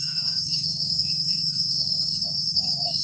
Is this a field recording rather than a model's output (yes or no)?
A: no